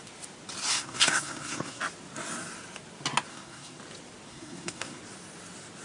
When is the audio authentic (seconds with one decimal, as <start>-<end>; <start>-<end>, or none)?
0.0-0.7; 1.8-3.3; 3.8-4.3; 5.0-5.8